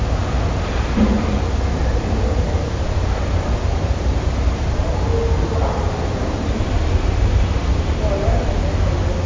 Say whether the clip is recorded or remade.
recorded